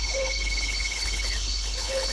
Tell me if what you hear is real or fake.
fake